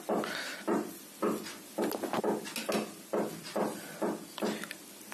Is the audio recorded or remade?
recorded